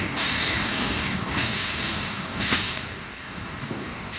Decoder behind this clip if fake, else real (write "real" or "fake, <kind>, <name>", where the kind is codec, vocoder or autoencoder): fake, codec, DAC